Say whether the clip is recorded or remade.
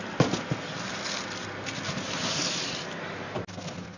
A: recorded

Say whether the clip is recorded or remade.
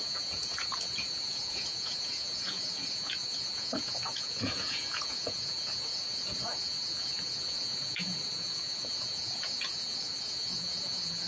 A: remade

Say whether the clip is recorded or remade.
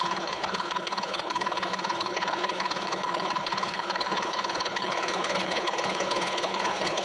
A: remade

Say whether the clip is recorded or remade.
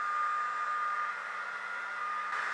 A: recorded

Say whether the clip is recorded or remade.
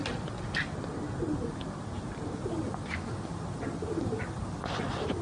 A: recorded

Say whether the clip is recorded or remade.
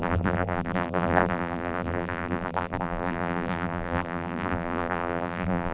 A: remade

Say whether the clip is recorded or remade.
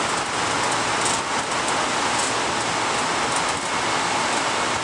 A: recorded